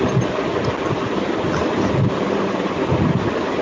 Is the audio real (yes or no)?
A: yes